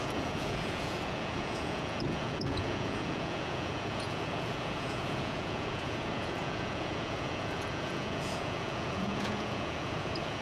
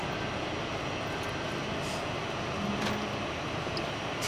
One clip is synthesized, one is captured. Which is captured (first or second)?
second